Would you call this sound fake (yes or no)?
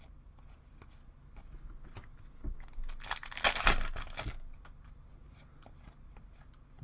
no